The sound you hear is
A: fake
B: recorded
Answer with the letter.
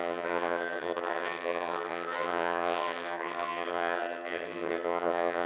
A